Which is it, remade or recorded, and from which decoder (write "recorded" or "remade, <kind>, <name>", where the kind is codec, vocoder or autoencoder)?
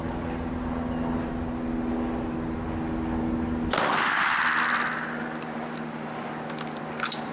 recorded